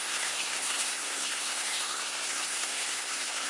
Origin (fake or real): fake